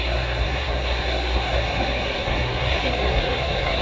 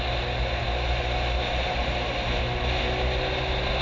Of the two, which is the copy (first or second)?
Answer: first